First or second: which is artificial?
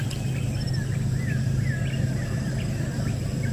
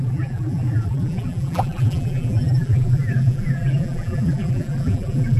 second